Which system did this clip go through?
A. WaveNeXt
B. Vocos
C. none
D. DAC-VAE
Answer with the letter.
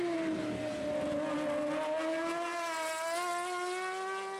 C